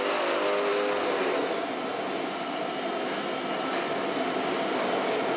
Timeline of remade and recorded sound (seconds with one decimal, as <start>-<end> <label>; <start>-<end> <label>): 0.0-5.4 recorded